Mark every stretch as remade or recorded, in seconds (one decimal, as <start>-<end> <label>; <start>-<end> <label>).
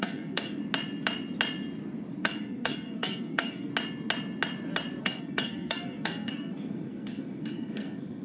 0.0-0.6 remade; 0.6-2.2 recorded; 2.2-3.7 remade; 3.7-5.0 recorded; 5.0-8.2 remade